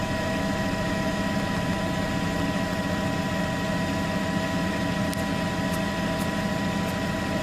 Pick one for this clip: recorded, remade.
recorded